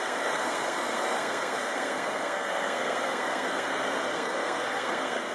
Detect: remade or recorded remade